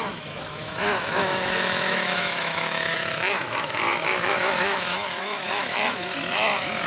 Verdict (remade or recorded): remade